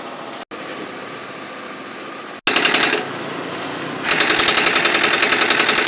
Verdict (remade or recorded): recorded